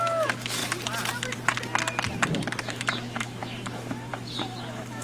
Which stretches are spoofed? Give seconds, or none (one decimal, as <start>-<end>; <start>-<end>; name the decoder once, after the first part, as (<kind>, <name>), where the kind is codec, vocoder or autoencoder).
0.0-0.6 (autoencoder, DAC-VAE); 2.6-5.0